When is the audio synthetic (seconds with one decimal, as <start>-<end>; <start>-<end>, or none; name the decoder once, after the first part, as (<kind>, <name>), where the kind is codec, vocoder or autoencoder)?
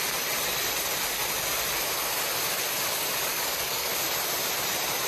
3.3-3.9 (codec, DAC)